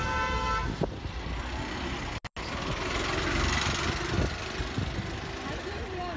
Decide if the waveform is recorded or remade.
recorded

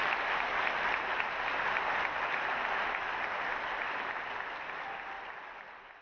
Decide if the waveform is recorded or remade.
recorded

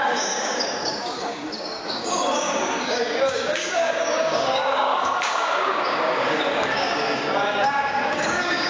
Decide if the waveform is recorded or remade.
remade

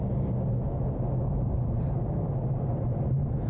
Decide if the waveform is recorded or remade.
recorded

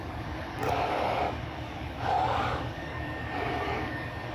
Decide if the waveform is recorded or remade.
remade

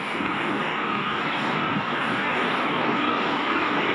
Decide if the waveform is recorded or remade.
remade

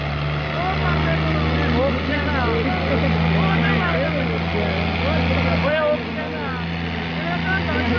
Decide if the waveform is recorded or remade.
recorded